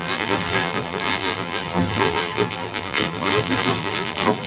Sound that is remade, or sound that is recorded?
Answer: remade